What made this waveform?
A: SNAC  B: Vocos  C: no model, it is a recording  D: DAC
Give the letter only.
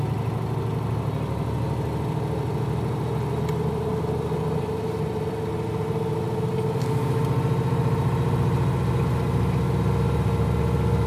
C